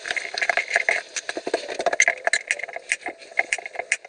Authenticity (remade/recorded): recorded